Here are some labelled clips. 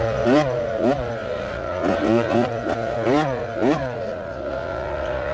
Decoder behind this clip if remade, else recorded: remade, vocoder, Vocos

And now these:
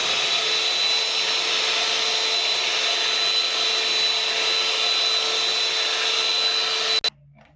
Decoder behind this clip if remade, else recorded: recorded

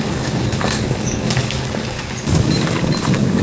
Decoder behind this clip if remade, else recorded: remade, codec, DAC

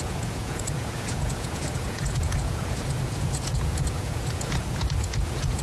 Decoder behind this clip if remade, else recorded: remade, vocoder, Vocos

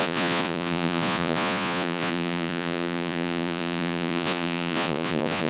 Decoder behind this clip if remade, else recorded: remade, vocoder, Vocos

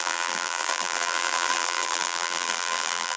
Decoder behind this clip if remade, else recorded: remade, vocoder, BigVGAN v2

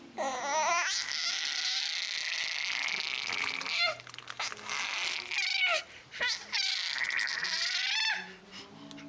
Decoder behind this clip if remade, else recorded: recorded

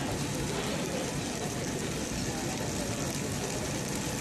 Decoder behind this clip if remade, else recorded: remade, vocoder, BigVGAN v2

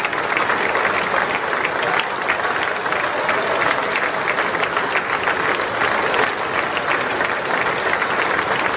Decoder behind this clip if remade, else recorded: recorded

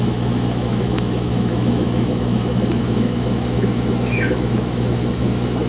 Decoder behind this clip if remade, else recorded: remade, autoencoder, DAC-VAE